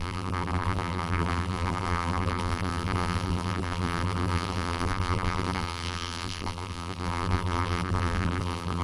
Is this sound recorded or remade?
remade